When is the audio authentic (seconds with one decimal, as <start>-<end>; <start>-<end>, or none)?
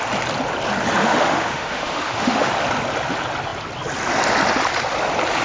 0.0-1.0; 2.5-5.4